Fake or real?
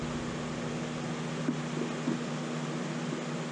real